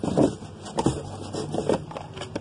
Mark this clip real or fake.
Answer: real